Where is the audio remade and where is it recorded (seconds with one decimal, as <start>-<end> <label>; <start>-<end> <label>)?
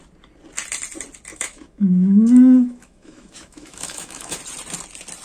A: 0.0-1.3 recorded; 1.3-4.4 remade; 4.4-5.2 recorded